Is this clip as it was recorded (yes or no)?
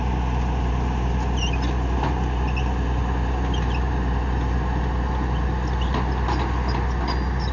yes